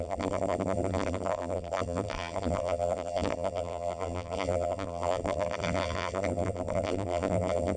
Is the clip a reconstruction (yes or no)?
yes